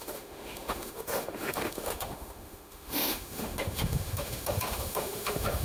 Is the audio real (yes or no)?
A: no